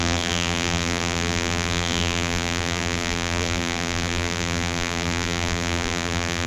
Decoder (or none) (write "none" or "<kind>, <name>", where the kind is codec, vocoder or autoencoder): vocoder, BigVGAN v2